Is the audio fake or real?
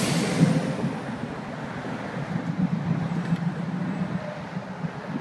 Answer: real